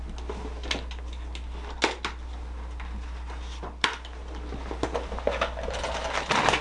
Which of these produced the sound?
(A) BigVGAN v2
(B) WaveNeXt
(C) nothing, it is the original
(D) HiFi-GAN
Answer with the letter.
C